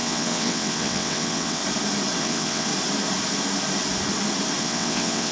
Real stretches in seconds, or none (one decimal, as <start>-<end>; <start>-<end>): 1.6-2.2; 2.7-4.6